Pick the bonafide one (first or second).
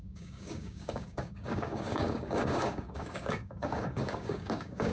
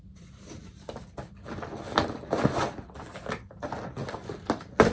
second